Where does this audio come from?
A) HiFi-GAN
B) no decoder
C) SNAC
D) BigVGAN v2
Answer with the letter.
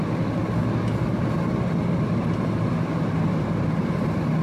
B